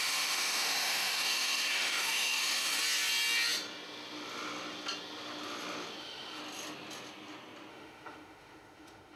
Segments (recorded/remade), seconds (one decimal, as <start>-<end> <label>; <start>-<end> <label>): 0.0-2.7 remade; 2.7-6.0 recorded; 6.0-6.4 remade; 6.4-7.7 recorded; 7.7-9.2 remade